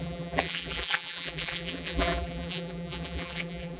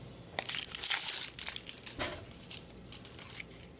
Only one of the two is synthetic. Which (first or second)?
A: first